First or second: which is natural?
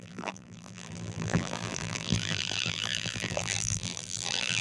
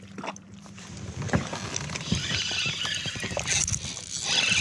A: second